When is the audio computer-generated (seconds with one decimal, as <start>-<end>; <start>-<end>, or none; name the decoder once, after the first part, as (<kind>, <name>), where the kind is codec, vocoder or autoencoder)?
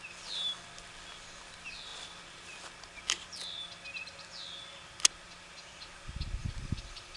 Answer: 6.4-7.2 (vocoder, BigVGAN v2)